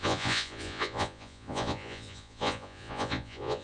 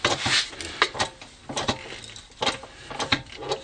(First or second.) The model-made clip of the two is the first